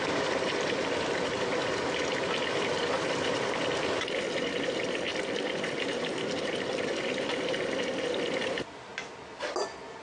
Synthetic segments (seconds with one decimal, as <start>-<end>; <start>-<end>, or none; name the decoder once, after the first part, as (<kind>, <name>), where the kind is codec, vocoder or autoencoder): 0.0-5.1 (vocoder, BigVGAN v2); 6.0-8.9